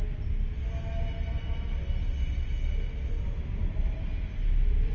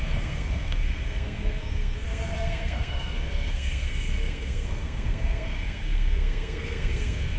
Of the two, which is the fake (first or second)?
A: second